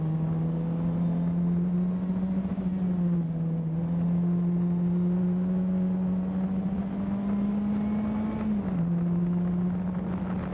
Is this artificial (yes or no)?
no